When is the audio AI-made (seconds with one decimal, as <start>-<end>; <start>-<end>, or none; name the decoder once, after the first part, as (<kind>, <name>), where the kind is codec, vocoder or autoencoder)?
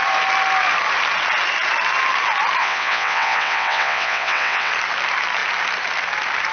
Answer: 2.6-4.7 (vocoder, WaveNeXt)